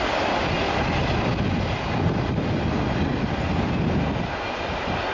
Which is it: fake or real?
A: real